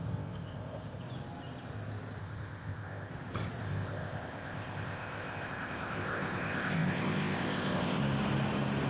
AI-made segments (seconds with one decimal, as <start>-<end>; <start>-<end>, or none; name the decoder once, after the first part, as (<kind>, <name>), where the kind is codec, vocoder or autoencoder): 0.0-1.0 (codec, ZipCodec); 2.2-3.1; 3.6-8.0